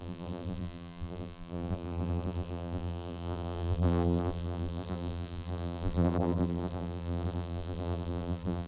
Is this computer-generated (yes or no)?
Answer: yes